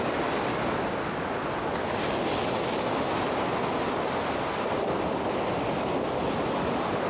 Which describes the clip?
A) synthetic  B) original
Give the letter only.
B